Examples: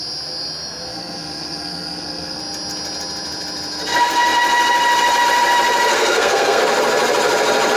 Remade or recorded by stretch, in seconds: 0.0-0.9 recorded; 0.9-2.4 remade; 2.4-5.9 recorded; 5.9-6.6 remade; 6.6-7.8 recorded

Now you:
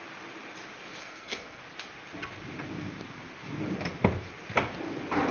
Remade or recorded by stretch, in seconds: 0.0-1.0 recorded; 1.0-1.6 remade; 1.6-5.3 recorded

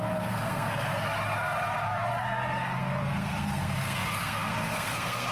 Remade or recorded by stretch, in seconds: 0.0-0.9 remade; 0.9-2.2 recorded; 2.2-5.3 remade

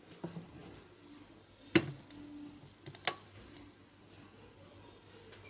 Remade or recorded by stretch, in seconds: 0.0-5.5 recorded

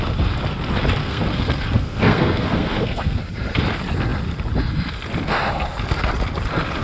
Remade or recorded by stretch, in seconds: 0.0-1.0 recorded; 1.0-3.2 remade; 3.2-6.8 recorded

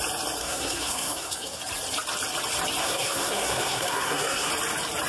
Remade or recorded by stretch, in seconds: 0.0-0.4 recorded; 0.4-1.6 remade; 1.6-2.8 recorded; 2.8-4.5 remade; 4.5-5.1 recorded